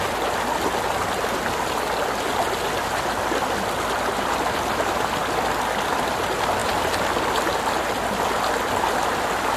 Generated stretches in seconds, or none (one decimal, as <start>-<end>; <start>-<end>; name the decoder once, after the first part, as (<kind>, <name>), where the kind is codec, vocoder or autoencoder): none